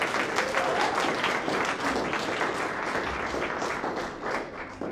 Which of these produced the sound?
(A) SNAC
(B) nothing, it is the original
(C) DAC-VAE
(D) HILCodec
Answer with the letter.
B